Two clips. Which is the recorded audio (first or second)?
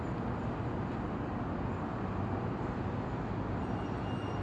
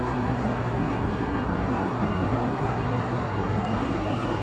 first